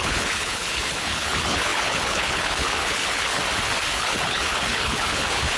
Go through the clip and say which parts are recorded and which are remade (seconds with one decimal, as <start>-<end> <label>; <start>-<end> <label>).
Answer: 0.0-3.4 remade; 3.4-3.9 recorded; 3.9-5.6 remade